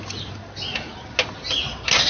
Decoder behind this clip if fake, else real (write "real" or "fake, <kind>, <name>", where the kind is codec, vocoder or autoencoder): real